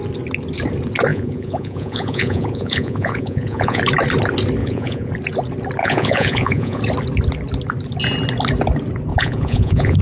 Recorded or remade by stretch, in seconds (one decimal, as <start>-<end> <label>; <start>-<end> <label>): 0.0-1.1 recorded; 1.1-3.8 remade; 3.8-4.6 recorded; 4.6-5.1 remade; 5.1-5.8 recorded; 5.8-6.8 remade; 6.8-9.1 recorded; 9.1-10.0 remade